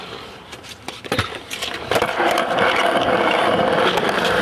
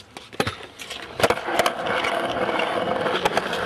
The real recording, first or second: second